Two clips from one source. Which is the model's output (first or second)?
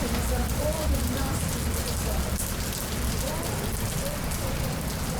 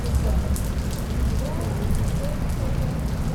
first